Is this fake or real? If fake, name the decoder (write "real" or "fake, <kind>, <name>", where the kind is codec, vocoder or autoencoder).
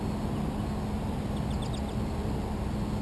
real